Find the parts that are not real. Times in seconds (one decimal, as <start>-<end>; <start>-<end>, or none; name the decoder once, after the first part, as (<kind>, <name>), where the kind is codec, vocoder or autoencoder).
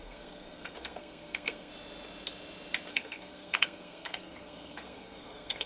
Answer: 0.0-1.7 (codec, SNAC); 2.9-5.7